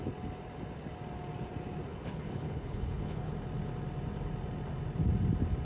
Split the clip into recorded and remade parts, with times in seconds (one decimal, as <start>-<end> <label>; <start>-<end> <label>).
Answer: 0.0-1.9 recorded; 1.9-3.3 remade; 3.3-5.7 recorded